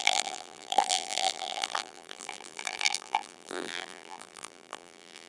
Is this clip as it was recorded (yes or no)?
no